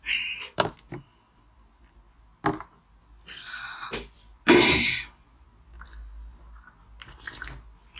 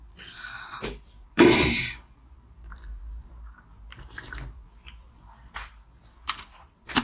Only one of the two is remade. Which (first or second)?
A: second